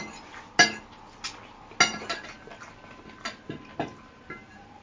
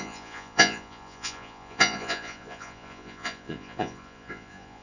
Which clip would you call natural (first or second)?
first